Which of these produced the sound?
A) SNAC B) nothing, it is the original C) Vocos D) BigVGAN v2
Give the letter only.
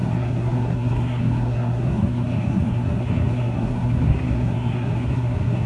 A